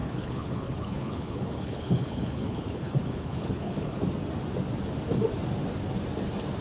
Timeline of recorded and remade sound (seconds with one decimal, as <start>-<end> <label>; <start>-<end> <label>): 0.0-4.0 remade; 4.0-6.6 recorded